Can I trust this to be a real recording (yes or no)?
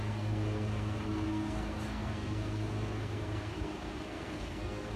no